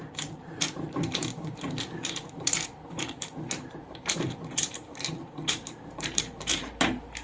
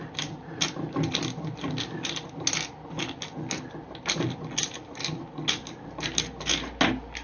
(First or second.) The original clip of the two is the second